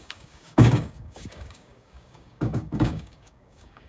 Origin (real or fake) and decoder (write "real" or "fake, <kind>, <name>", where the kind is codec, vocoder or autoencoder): fake, codec, DAC